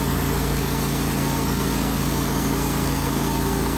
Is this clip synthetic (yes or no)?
yes